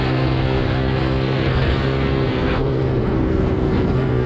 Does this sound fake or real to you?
fake